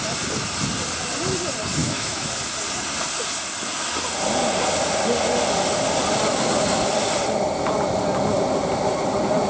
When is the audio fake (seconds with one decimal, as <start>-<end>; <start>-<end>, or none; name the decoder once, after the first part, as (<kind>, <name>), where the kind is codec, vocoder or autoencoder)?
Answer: 1.8-2.3 (autoencoder, DAC-VAE)